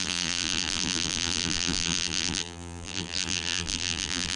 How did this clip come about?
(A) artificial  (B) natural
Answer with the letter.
A